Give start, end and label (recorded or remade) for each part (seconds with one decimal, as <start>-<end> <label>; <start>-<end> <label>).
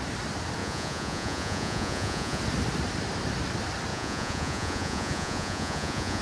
0.0-0.6 recorded; 0.6-2.4 remade; 2.4-3.9 recorded; 3.9-6.2 remade